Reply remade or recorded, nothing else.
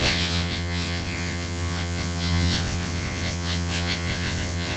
remade